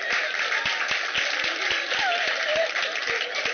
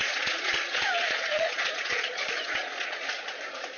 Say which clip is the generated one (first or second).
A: second